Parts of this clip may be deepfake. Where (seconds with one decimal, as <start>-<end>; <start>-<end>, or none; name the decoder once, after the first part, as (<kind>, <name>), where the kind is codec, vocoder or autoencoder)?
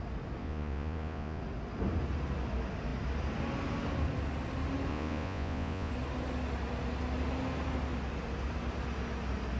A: 0.4-1.4 (vocoder, Vocos); 4.9-5.9